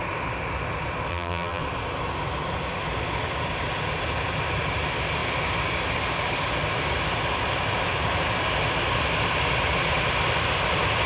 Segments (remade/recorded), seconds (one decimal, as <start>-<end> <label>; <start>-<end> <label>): 0.0-1.1 recorded; 1.1-1.6 remade; 1.6-11.1 recorded